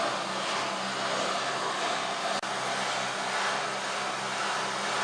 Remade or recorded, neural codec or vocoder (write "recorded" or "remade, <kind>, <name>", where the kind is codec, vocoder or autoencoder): recorded